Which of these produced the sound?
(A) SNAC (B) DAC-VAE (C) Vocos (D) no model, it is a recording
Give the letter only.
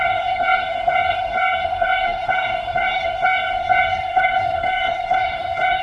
A